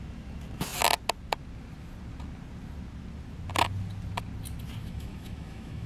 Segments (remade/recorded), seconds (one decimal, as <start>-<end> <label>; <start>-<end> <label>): 0.0-4.8 recorded; 4.8-5.9 remade